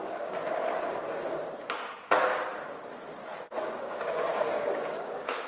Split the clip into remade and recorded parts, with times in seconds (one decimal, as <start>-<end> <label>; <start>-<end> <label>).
0.0-0.4 remade; 0.4-3.7 recorded; 3.7-5.5 remade